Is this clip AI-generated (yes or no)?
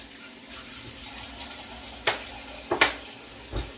no